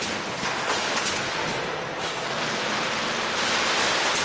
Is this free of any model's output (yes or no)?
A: yes